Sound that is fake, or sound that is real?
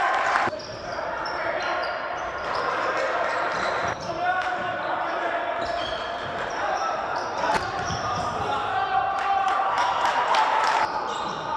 fake